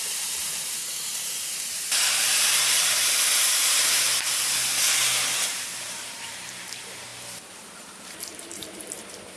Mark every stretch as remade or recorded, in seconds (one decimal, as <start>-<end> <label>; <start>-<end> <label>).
0.0-4.3 remade; 4.3-5.0 recorded; 5.0-9.4 remade